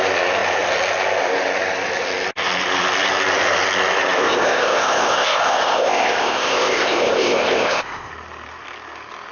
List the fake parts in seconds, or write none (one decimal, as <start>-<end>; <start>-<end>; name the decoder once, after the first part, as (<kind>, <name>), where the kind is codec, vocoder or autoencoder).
4.2-8.1 (codec, ZipCodec)